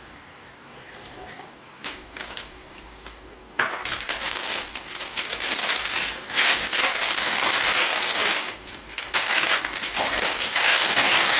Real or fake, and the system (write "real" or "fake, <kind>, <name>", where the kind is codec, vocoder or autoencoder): fake, codec, DAC